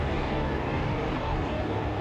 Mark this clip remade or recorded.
remade